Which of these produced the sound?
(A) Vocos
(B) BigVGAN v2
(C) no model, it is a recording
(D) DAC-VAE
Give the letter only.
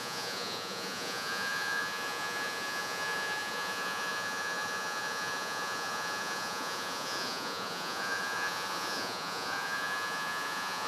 A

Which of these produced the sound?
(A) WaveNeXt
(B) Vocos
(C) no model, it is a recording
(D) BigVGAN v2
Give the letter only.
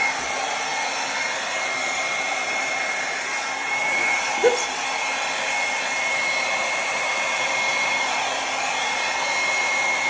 D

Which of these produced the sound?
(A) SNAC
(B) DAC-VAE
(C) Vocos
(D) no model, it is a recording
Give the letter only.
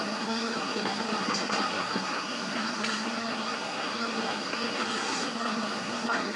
A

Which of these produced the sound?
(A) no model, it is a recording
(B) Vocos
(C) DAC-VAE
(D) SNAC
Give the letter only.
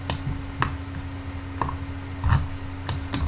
A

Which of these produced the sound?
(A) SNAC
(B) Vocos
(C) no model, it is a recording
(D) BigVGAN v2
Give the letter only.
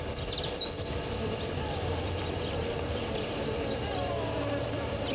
D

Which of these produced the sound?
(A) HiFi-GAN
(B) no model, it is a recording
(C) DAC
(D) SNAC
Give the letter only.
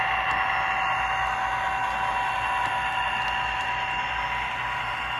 B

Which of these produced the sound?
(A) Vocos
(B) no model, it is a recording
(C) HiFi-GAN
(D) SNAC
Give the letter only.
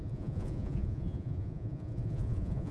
A